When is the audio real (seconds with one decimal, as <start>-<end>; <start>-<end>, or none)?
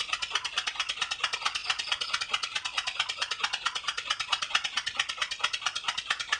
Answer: 1.6-2.2